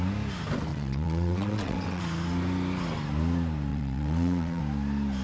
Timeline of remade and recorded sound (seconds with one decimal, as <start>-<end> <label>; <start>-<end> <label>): 0.0-0.7 recorded; 0.7-2.0 remade; 2.0-3.7 recorded; 3.7-4.6 remade; 4.6-5.2 recorded